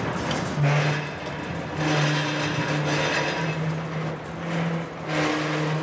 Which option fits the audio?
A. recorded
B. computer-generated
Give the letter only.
A